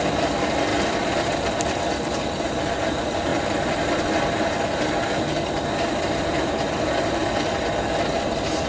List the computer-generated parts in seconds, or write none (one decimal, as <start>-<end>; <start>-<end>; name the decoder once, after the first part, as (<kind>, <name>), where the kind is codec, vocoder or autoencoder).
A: none